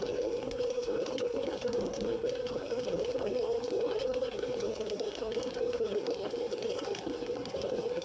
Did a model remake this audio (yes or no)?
yes